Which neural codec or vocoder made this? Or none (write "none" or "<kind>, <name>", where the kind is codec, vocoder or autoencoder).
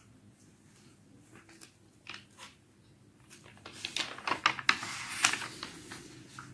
none